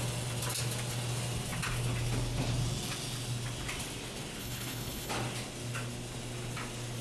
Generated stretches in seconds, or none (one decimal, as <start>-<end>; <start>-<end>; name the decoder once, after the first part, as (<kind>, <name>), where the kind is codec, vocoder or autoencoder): 4.4-5.1 (codec, HILCodec)